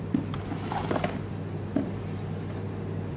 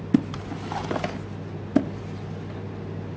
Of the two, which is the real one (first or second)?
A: second